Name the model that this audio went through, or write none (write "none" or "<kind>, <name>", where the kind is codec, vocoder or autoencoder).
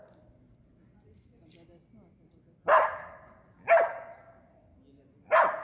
none